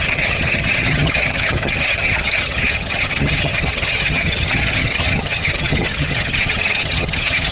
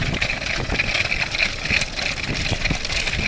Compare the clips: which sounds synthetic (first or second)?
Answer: first